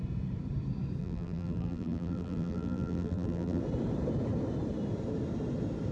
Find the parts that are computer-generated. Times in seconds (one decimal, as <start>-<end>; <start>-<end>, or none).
1.0-3.6